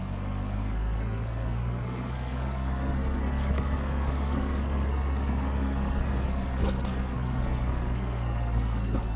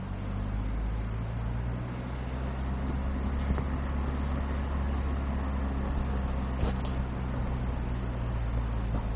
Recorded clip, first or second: second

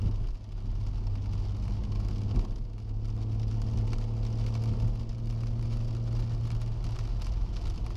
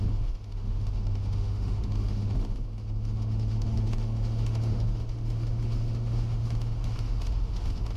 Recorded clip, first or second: first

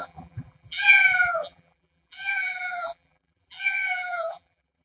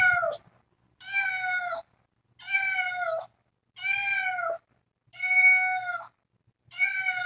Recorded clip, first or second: second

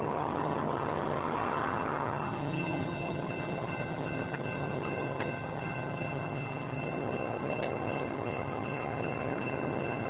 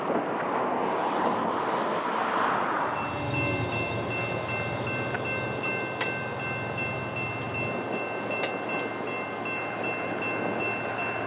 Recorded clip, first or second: second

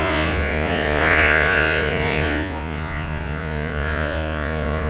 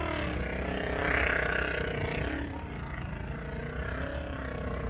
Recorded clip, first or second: second